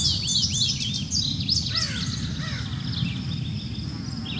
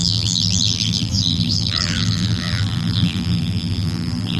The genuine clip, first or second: first